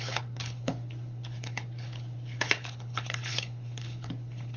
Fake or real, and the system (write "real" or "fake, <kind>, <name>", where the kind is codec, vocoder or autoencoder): fake, codec, HILCodec